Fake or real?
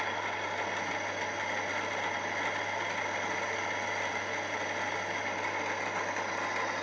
real